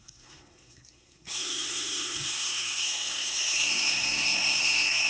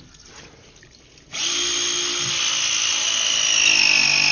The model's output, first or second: first